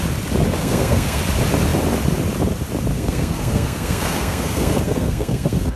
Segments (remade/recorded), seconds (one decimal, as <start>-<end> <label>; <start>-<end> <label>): 0.0-0.6 recorded; 0.6-1.2 remade; 1.2-2.9 recorded; 2.9-5.8 remade